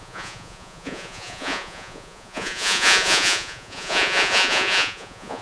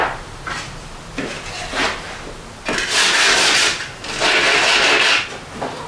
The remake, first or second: first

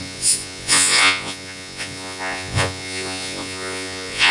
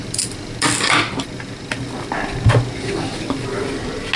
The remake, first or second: first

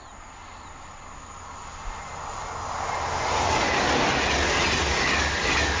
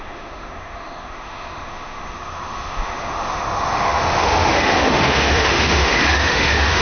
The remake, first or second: second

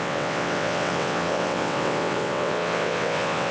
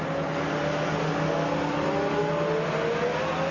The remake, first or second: first